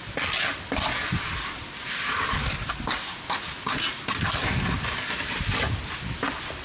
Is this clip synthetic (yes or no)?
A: no